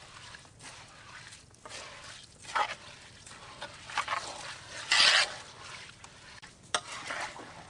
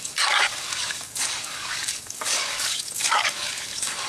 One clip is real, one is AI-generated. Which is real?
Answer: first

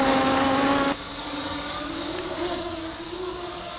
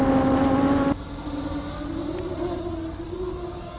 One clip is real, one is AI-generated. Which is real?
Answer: second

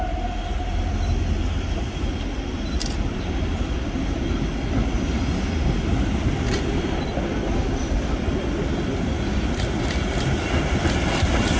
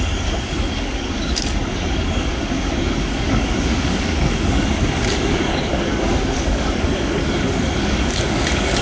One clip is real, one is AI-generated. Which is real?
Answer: first